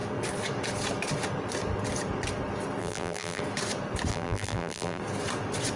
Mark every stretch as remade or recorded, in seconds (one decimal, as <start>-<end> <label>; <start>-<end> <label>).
0.0-2.8 recorded; 2.8-3.4 remade; 3.4-4.1 recorded; 4.1-5.0 remade; 5.0-5.8 recorded